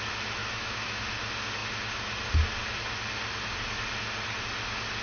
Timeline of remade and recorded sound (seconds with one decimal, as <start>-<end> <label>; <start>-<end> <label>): 0.0-0.4 recorded; 0.4-1.0 remade; 1.0-5.0 recorded